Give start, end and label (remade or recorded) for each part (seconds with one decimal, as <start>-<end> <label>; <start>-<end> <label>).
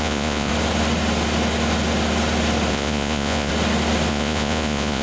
0.0-0.5 remade; 0.5-2.7 recorded; 2.7-3.5 remade; 3.5-4.1 recorded; 4.1-5.0 remade